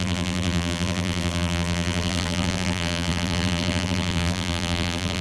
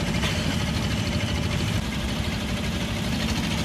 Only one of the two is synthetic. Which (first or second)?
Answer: first